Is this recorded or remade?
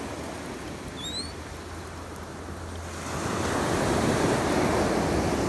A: recorded